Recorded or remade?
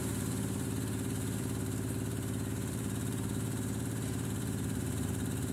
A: remade